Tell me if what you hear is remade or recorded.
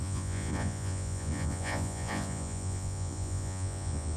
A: remade